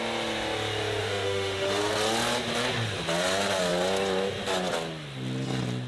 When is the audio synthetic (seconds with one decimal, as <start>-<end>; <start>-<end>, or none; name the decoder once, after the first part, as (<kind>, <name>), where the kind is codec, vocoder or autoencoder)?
1.0-1.8 (autoencoder, DAC-VAE)